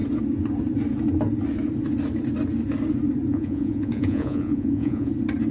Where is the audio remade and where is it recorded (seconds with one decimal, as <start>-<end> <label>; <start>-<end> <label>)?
0.0-3.3 recorded; 3.3-5.1 remade; 5.1-5.5 recorded